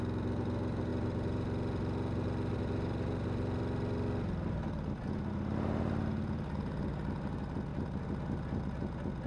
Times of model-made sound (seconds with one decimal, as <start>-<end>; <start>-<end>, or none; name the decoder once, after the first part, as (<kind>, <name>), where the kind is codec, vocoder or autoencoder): none